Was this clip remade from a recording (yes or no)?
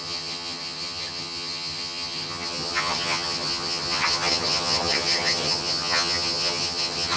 yes